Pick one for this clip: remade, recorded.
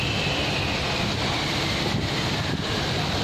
remade